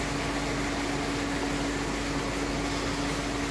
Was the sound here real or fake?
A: real